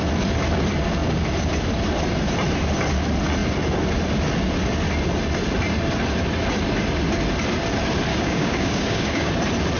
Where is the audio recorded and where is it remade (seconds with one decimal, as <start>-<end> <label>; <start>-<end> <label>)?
0.0-8.1 recorded; 8.1-9.3 remade; 9.3-9.8 recorded